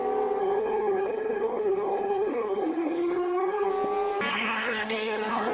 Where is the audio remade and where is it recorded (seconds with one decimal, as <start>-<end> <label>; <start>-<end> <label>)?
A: 0.0-0.4 recorded; 0.4-3.7 remade; 3.7-4.3 recorded; 4.3-5.5 remade